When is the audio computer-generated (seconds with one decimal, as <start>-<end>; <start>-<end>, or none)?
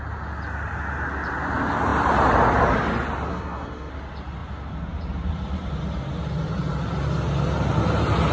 3.3-3.9